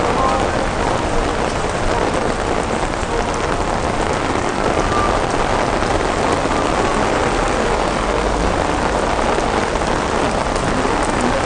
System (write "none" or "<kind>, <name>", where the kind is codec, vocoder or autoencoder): none